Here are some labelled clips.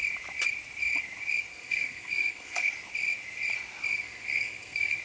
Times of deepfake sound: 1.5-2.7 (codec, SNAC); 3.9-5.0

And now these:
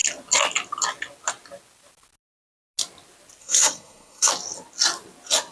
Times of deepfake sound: 3.4-4.3 (codec, SNAC)

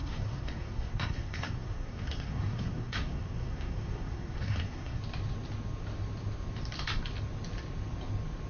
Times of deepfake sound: 0.0-5.0 (codec, SNAC)